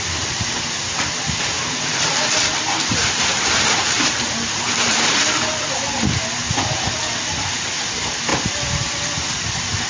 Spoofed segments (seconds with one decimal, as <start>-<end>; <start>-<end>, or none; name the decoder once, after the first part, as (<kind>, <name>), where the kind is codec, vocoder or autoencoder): 2.9-5.2 (vocoder, BigVGAN v2); 8.3-9.3